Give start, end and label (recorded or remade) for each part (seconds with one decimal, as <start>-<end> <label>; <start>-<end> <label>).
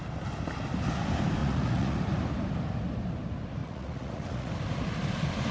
0.0-1.4 recorded; 1.4-2.0 remade; 2.0-3.6 recorded; 3.6-4.5 remade; 4.5-5.5 recorded